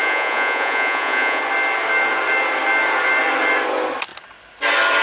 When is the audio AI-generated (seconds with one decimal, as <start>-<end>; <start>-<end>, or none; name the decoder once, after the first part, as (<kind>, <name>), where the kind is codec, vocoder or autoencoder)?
0.0-1.4 (vocoder, Vocos)